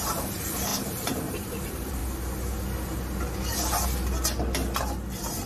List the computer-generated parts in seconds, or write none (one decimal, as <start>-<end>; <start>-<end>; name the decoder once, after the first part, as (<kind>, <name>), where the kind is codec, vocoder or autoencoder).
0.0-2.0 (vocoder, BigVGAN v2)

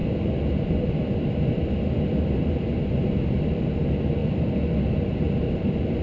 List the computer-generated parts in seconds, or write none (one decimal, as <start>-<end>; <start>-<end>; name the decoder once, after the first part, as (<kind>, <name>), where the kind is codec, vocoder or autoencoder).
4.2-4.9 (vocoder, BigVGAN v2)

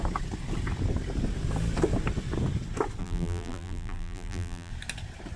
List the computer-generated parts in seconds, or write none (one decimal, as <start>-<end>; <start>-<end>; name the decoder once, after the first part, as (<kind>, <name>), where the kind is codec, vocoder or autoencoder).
3.0-4.7 (vocoder, BigVGAN v2)